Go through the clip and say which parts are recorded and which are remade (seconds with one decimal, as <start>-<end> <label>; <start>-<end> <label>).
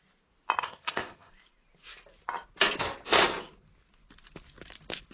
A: 0.0-0.6 recorded; 0.6-1.3 remade; 1.3-5.1 recorded